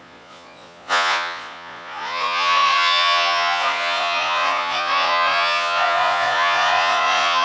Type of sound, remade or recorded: remade